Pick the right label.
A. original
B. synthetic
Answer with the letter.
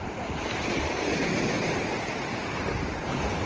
A